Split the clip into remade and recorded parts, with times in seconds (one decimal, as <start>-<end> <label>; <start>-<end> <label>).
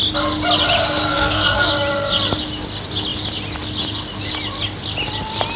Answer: 0.0-1.1 recorded; 1.1-1.7 remade; 1.7-5.6 recorded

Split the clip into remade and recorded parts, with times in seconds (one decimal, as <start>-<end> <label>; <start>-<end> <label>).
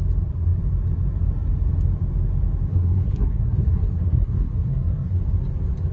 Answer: 0.0-2.7 recorded; 2.7-5.2 remade; 5.2-5.9 recorded